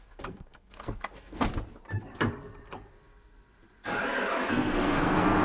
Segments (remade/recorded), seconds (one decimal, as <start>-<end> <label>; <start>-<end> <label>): 0.0-1.5 remade; 1.5-4.5 recorded; 4.5-5.4 remade

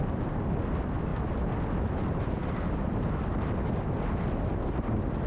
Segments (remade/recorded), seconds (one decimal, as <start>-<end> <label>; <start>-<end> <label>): 0.0-5.3 recorded

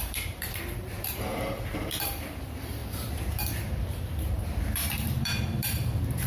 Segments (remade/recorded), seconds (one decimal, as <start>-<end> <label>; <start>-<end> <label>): 0.0-6.3 remade

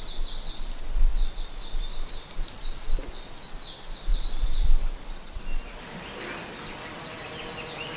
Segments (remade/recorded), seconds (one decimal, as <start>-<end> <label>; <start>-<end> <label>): 0.0-2.6 recorded; 2.6-3.1 remade; 3.1-4.1 recorded; 4.1-7.0 remade; 7.0-8.0 recorded

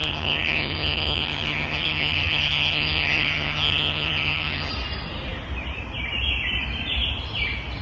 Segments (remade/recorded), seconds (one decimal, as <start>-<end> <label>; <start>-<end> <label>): 0.0-4.7 remade; 4.7-7.8 recorded